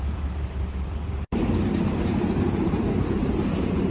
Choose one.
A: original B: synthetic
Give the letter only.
B